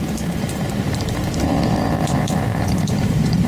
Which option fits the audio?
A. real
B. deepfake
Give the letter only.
B